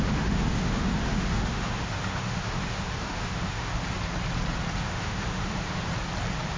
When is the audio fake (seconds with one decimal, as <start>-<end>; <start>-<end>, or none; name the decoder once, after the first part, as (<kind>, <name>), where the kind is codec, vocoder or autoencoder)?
0.0-3.7 (autoencoder, DAC-VAE); 4.8-5.9